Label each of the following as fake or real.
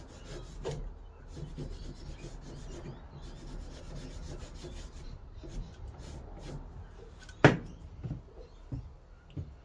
real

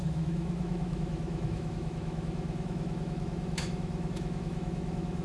fake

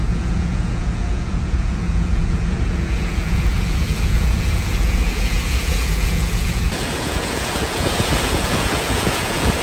fake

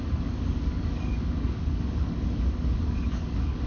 fake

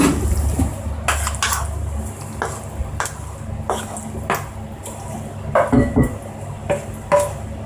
real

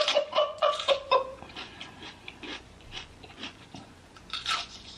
fake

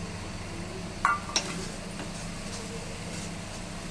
real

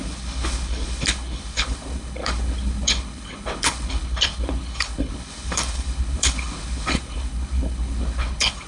fake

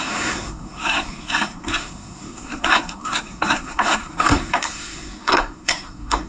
fake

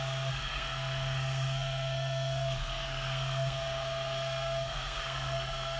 fake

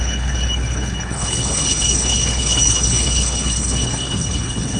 fake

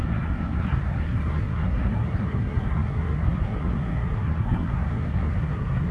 fake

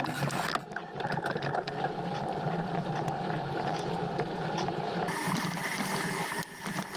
real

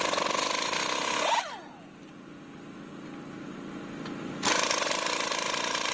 real